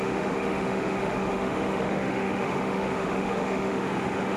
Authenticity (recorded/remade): remade